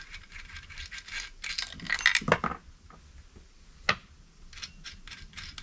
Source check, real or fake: real